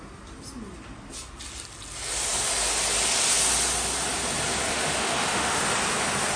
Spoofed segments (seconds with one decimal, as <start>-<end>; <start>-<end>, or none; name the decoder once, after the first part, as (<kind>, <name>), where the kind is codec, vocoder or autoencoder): 4.7-5.6 (autoencoder, DAC-VAE)